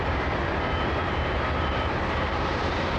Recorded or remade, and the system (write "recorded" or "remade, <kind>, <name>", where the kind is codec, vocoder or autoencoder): remade, vocoder, BigVGAN v2